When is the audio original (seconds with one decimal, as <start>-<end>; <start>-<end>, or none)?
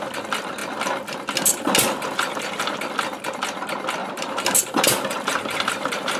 0.0-4.0